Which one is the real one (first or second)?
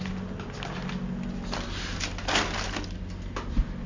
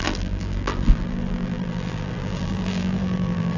first